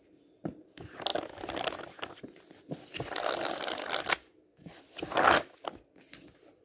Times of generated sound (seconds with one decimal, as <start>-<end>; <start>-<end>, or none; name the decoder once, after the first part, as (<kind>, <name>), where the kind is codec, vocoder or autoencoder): none